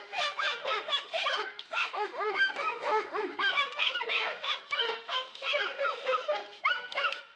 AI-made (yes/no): yes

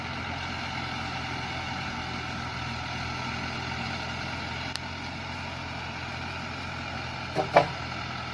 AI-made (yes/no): no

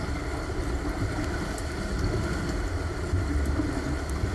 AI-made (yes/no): no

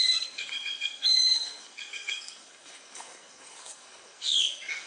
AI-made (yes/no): yes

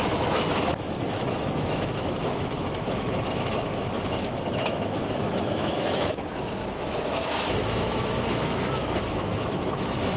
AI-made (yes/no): yes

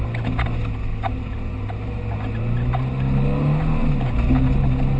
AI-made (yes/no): no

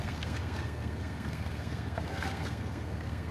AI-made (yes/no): yes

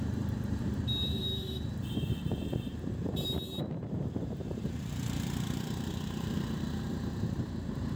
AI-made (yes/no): yes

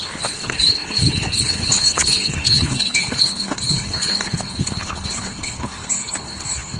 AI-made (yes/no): yes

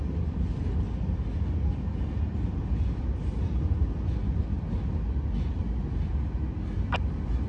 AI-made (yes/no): no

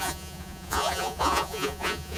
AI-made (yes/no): yes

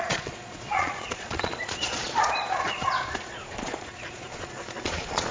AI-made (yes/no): yes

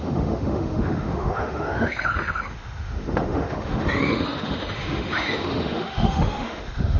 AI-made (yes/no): yes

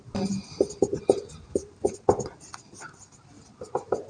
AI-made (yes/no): no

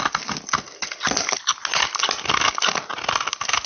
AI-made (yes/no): no